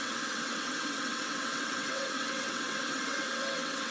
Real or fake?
fake